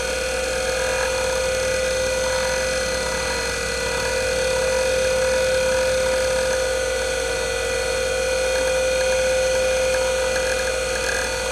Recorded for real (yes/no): yes